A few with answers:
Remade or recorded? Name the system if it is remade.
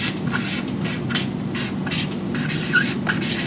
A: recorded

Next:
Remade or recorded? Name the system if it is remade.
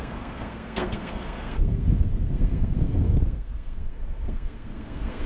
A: remade, codec, SNAC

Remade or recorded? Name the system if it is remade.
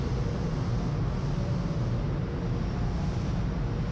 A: recorded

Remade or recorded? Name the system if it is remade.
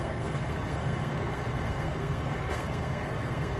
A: remade, codec, SNAC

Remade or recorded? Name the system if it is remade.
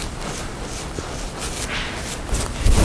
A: recorded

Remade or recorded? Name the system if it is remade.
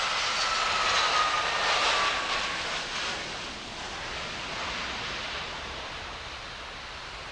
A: recorded